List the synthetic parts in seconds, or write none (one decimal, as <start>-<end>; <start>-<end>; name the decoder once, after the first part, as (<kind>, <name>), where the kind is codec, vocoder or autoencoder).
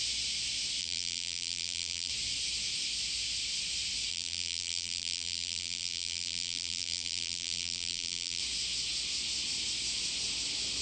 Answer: 0.8-2.1 (vocoder, BigVGAN v2); 4.1-8.4